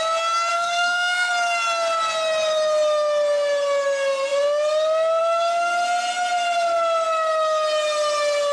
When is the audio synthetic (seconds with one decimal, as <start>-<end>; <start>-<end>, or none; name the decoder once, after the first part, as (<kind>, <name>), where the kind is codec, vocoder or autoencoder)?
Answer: 0.5-1.3 (codec, SNAC)